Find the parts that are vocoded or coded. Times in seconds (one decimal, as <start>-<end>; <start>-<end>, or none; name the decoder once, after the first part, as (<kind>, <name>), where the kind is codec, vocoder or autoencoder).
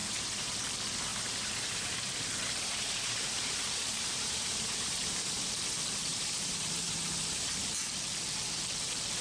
0.0-0.5 (vocoder, BigVGAN v2); 1.1-5.5; 6.1-7.5